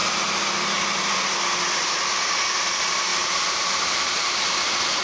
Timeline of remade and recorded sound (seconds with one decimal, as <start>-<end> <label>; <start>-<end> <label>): 0.0-5.0 recorded